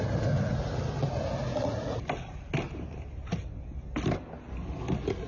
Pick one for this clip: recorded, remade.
recorded